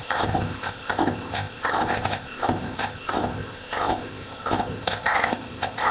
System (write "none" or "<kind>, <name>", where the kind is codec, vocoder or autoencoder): codec, ZipCodec